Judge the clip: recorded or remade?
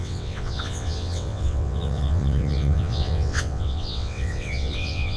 remade